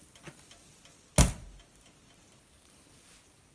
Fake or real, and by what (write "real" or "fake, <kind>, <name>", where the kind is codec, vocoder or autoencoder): real